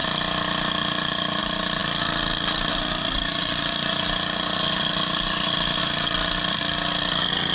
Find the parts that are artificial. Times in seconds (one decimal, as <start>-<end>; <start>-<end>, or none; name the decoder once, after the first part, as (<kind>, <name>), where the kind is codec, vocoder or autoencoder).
none